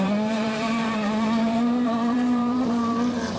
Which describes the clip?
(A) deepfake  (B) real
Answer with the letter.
A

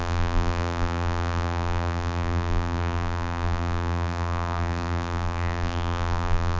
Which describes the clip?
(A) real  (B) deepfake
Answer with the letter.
B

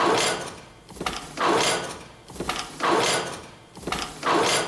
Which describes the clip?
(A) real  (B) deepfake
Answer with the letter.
B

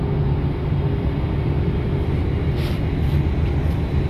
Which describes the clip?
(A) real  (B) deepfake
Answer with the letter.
A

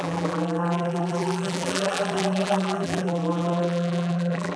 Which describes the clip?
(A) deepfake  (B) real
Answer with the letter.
A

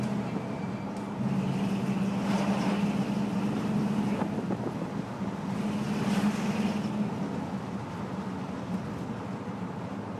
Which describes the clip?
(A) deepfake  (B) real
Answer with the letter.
B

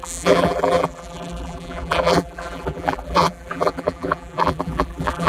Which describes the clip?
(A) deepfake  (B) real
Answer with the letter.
A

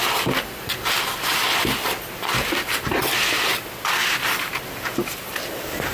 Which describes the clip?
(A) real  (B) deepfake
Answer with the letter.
B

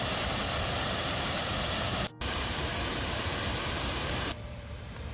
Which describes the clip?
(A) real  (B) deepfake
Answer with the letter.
B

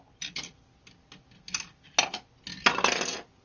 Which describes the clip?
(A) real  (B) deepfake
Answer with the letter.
A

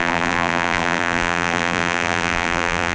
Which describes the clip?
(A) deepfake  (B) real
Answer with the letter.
A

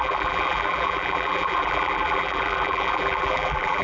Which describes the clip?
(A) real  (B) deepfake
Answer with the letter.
B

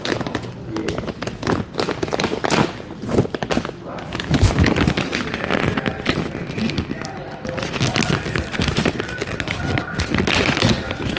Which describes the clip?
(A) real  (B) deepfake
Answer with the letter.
A